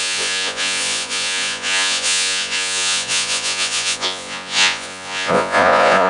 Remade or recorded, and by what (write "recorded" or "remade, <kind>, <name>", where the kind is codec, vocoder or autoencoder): remade, vocoder, Vocos